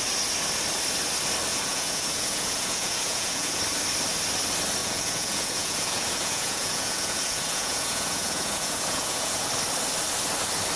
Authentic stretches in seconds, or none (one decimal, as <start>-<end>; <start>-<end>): 0.0-1.5; 3.6-4.8; 9.5-10.8